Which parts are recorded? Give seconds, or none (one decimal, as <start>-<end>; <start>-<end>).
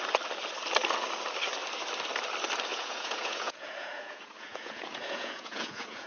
0.0-2.7